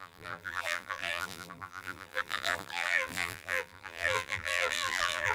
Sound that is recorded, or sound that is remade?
remade